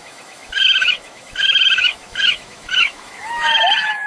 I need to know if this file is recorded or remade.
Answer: remade